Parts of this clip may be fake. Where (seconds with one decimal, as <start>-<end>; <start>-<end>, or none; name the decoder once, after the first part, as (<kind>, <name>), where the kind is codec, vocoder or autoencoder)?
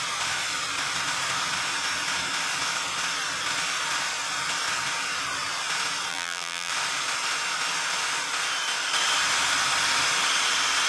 6.1-6.7 (vocoder, BigVGAN v2)